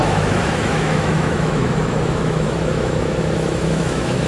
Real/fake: fake